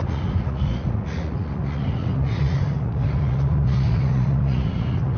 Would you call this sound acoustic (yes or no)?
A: no